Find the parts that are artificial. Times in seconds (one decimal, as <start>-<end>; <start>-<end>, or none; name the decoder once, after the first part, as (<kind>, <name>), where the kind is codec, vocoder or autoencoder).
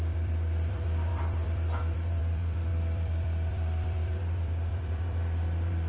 0.0-5.9 (vocoder, BigVGAN v2)